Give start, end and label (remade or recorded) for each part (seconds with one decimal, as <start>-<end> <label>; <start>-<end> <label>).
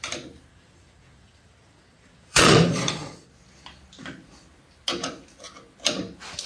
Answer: 0.0-0.5 recorded; 0.5-3.3 remade; 3.3-6.5 recorded